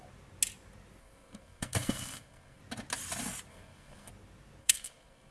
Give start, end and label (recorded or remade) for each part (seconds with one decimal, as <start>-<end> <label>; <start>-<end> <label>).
0.0-1.0 recorded; 1.0-2.6 remade; 2.6-3.5 recorded; 3.5-4.1 remade; 4.1-4.6 recorded; 4.6-5.3 remade